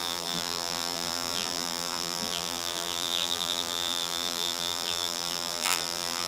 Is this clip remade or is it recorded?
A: remade